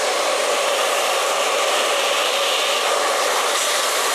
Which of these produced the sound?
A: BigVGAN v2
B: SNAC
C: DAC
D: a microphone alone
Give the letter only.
A